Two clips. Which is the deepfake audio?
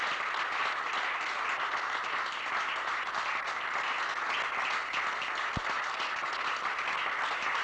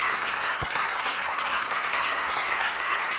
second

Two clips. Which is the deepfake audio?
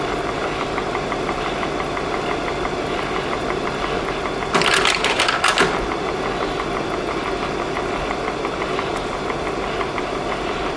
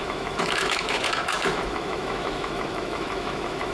second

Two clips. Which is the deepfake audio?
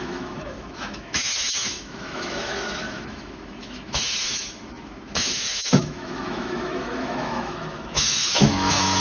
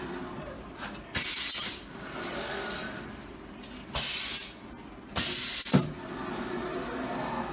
first